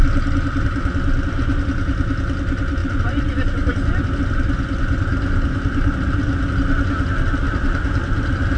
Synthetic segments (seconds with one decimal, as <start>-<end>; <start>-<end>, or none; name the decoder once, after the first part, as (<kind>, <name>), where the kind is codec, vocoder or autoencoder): none